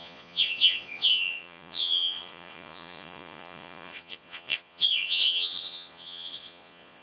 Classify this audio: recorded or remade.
remade